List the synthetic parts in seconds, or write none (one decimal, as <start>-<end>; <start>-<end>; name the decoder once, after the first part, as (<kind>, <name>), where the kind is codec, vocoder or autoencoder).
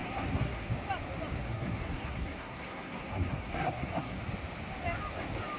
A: 0.0-0.7 (codec, SNAC); 1.4-4.2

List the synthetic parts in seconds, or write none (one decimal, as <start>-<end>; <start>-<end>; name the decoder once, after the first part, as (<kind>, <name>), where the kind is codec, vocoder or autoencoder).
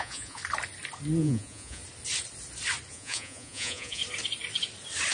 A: 0.0-0.4 (vocoder, Vocos); 1.2-1.8; 2.9-4.0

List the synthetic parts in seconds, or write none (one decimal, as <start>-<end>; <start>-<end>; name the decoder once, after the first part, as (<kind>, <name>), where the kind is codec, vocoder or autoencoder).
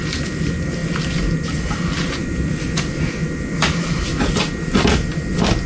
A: none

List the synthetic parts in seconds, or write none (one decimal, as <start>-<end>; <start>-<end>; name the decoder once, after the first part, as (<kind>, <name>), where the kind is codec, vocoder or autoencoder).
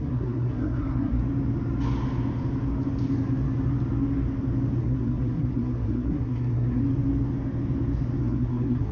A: 0.0-1.2 (codec, SNAC); 4.8-6.8; 8.2-8.9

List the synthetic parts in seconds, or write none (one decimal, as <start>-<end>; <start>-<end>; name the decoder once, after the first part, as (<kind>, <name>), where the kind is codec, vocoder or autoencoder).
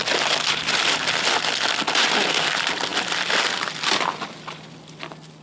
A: none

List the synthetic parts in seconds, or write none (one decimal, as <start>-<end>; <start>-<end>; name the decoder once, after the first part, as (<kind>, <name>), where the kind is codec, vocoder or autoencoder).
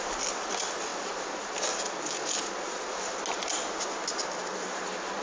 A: none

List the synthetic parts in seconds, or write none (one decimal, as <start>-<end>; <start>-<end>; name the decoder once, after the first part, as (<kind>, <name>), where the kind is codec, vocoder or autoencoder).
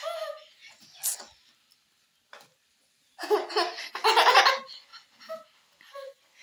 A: none